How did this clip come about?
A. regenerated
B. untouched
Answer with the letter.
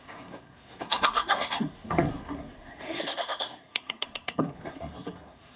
A